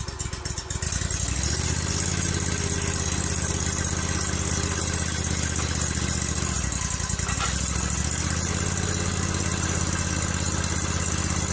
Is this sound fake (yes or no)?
no